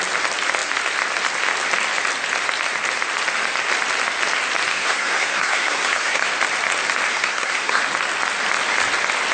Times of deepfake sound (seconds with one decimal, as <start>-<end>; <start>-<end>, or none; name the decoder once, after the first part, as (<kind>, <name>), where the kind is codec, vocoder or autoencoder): 4.7-6.3 (codec, SNAC); 7.1-7.8